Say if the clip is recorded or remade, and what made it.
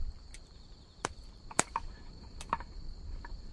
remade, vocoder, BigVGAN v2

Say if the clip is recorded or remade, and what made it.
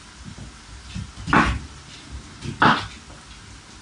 recorded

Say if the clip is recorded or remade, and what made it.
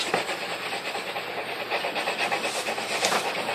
recorded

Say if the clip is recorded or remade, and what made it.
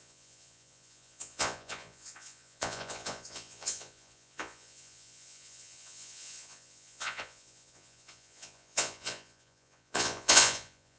remade, vocoder, Vocos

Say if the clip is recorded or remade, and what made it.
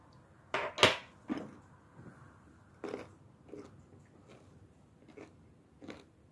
recorded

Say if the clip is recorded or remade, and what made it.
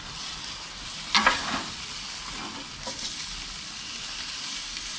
recorded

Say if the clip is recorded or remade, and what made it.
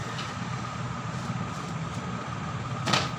recorded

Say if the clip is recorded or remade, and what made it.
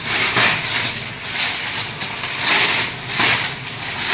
recorded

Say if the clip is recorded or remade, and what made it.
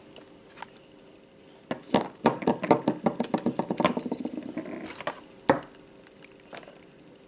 recorded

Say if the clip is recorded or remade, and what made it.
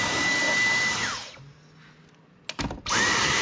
recorded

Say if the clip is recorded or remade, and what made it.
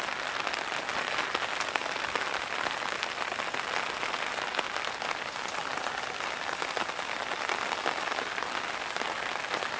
recorded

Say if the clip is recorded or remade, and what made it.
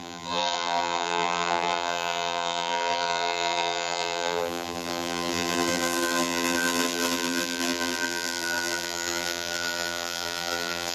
remade, vocoder, BigVGAN v2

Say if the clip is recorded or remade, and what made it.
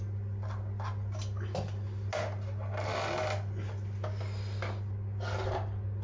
recorded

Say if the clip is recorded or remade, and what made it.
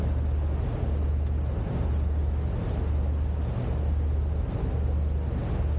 recorded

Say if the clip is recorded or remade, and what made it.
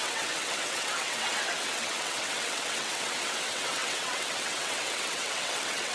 remade, vocoder, WaveNeXt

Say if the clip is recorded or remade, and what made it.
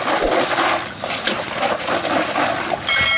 recorded